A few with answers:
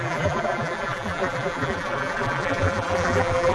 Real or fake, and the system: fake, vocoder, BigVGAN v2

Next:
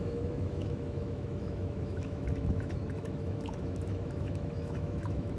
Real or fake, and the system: fake, autoencoder, DAC-VAE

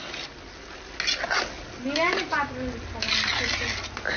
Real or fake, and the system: real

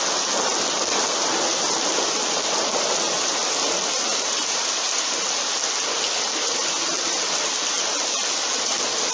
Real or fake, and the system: real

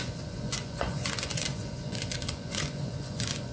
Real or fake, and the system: fake, vocoder, Vocos